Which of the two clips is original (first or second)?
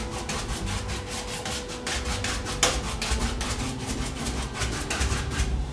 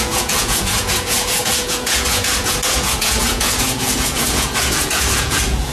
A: first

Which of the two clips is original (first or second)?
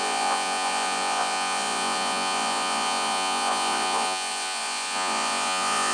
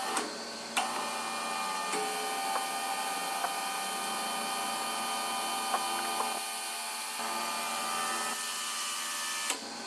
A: second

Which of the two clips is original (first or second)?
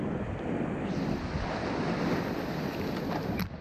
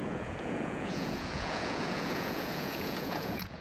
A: first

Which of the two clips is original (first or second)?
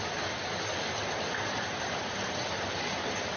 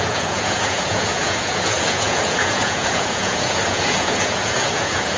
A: first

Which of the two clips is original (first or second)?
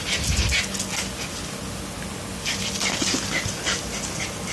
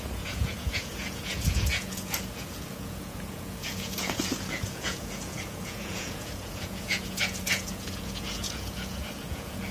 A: first